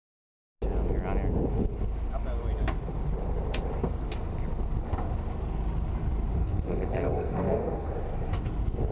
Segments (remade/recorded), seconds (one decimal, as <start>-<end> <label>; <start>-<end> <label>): 0.0-6.4 recorded; 6.4-7.9 remade; 7.9-8.9 recorded